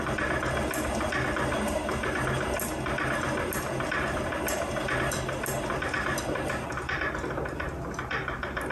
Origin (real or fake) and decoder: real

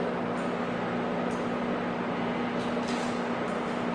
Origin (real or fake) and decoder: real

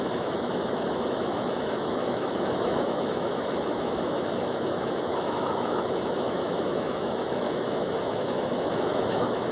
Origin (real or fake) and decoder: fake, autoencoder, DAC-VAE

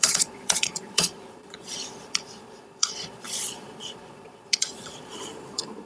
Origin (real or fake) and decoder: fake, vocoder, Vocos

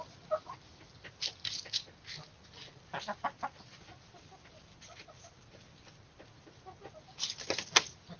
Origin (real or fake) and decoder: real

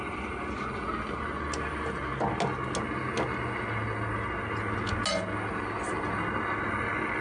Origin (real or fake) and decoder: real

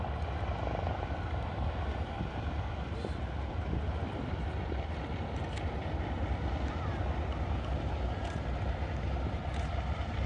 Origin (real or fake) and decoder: real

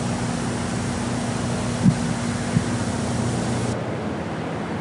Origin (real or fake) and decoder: real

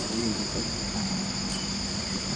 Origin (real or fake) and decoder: fake, vocoder, BigVGAN v2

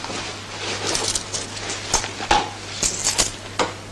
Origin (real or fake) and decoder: real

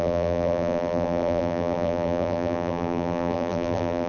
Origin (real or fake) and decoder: fake, vocoder, BigVGAN v2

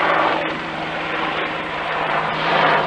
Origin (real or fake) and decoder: fake, vocoder, BigVGAN v2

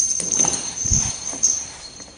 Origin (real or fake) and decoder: real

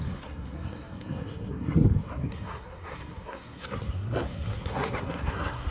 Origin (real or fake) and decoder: fake, codec, SNAC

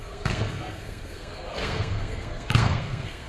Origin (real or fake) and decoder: fake, codec, SNAC